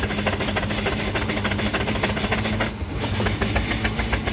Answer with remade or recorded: recorded